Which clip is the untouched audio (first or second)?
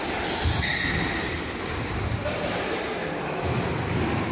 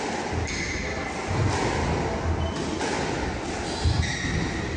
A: second